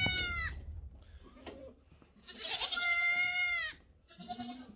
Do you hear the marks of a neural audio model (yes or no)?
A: yes